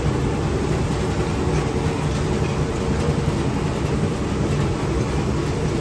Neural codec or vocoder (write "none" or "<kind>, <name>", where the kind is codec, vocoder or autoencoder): none